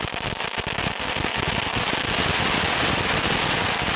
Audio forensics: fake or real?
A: real